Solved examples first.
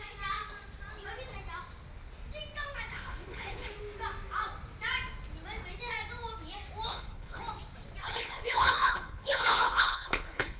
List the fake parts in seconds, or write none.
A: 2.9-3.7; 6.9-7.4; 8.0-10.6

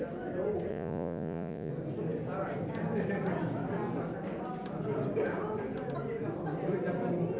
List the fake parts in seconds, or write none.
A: 0.7-1.7

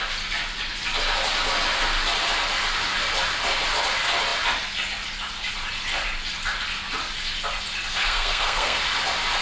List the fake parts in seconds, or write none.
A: 7.9-8.8